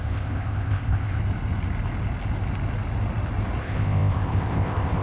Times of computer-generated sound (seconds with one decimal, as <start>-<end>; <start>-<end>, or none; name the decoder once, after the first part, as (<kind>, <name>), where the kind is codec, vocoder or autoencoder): 0.0-1.2 (codec, ZipCodec); 3.6-5.0